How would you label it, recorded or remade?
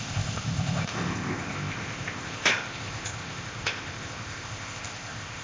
remade